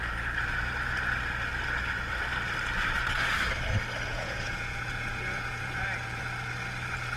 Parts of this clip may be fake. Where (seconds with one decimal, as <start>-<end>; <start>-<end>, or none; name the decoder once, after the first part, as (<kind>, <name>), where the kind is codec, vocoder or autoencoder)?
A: 4.1-6.2 (vocoder, Vocos)

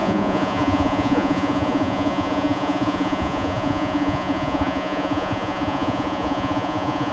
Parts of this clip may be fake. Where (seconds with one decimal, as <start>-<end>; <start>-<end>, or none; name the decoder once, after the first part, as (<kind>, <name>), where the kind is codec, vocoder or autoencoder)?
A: 0.0-7.1 (vocoder, Vocos)

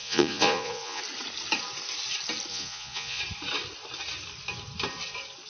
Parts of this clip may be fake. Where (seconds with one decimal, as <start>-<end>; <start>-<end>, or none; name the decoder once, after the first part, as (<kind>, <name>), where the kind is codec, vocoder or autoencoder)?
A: 0.0-1.0 (vocoder, Vocos); 2.5-3.2

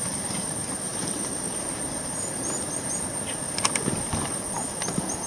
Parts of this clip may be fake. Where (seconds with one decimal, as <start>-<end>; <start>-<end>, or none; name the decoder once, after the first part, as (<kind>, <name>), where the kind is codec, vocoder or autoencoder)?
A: none

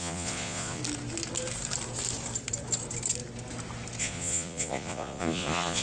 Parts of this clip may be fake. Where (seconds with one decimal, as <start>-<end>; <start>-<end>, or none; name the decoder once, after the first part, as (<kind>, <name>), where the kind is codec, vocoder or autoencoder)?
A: 0.0-0.8 (vocoder, Vocos); 4.0-5.8

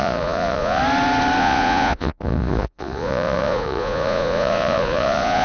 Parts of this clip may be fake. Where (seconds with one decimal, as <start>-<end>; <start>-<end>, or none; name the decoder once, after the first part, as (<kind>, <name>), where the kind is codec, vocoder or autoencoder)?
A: 0.0-0.8 (vocoder, Vocos); 1.4-5.4

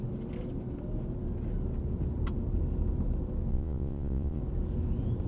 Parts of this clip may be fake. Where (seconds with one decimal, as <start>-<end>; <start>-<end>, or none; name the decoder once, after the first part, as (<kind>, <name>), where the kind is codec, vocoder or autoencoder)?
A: 3.5-4.4 (vocoder, Vocos)